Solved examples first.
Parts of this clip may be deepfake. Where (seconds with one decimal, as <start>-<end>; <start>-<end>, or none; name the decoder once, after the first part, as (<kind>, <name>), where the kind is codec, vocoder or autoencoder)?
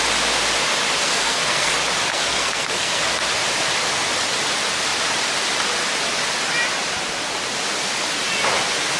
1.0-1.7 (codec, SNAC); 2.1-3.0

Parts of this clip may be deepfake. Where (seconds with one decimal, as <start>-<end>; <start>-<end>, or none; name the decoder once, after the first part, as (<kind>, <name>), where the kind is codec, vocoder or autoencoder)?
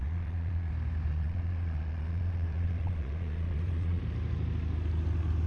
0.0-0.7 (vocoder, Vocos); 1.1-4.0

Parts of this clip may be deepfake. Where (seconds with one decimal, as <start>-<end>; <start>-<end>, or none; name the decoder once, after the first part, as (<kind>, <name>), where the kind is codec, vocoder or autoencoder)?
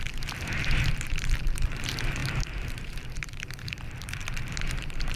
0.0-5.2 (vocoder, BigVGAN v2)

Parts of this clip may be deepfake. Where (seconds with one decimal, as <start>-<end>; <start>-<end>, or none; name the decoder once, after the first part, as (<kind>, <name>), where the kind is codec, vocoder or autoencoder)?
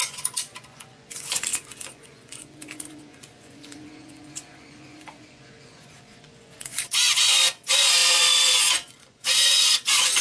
0.0-10.2 (vocoder, Vocos)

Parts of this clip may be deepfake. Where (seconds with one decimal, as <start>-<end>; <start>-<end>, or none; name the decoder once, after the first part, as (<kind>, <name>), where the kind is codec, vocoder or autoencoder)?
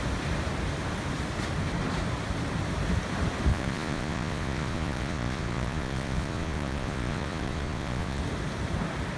3.5-8.2 (vocoder, Vocos)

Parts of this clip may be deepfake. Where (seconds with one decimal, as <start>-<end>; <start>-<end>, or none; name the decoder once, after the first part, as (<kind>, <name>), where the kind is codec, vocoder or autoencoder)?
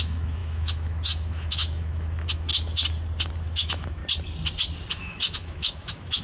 0.0-2.5 (autoencoder, DAC-VAE); 3.4-4.0; 4.9-6.2